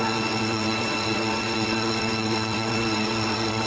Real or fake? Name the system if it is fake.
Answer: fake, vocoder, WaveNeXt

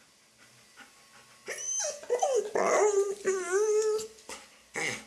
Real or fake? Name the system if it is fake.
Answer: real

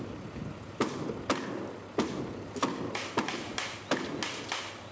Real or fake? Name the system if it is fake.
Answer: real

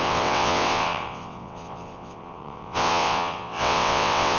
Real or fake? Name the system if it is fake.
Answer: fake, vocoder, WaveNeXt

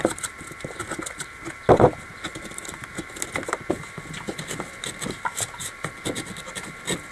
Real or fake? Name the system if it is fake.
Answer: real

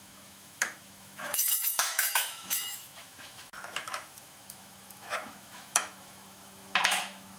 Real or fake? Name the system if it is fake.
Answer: fake, autoencoder, DAC-VAE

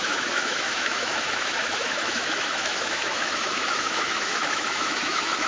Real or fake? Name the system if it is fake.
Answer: fake, autoencoder, DAC-VAE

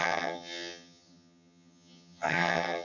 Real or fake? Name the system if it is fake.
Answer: fake, vocoder, HiFi-GAN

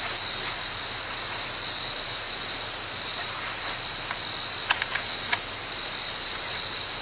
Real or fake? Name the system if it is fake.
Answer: real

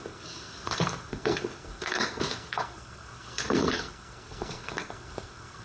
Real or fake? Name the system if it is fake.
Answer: fake, codec, SNAC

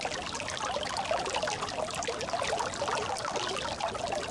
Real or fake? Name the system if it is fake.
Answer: real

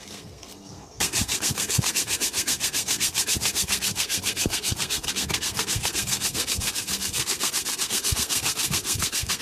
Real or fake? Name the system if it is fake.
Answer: fake, codec, SNAC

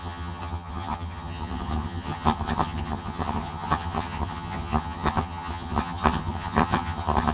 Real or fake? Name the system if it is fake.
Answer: fake, vocoder, HiFi-GAN